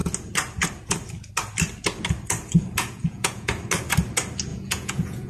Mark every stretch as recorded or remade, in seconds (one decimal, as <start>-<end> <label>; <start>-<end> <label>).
0.0-2.8 recorded; 2.8-3.5 remade; 3.5-4.5 recorded; 4.5-5.3 remade